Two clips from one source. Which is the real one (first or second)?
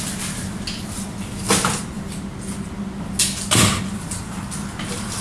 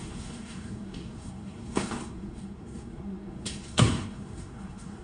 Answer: first